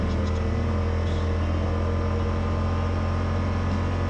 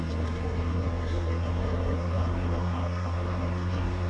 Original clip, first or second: first